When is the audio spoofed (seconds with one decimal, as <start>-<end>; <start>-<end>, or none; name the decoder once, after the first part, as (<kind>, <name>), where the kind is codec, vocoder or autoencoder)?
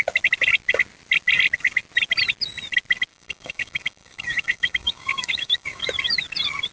3.1-5.8 (autoencoder, DAC-VAE)